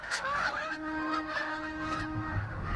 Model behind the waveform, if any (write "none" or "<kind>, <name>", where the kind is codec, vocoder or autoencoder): autoencoder, DAC-VAE